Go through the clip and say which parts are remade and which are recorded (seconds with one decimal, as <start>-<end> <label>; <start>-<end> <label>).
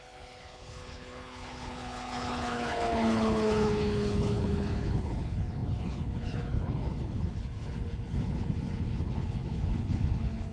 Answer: 0.0-10.5 remade